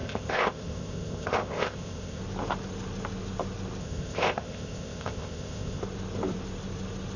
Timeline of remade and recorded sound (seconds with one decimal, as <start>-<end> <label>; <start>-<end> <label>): 0.0-2.2 remade; 2.2-3.8 recorded; 3.8-5.8 remade; 5.8-7.2 recorded